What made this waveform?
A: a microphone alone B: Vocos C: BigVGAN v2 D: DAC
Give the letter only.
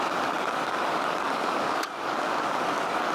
D